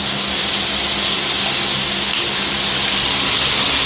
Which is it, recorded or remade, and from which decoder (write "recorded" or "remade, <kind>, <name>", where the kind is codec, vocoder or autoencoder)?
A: recorded